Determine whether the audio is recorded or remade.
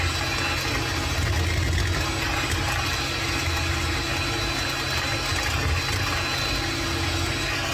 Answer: recorded